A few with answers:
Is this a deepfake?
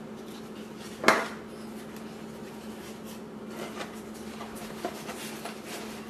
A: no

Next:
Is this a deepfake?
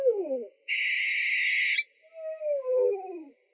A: no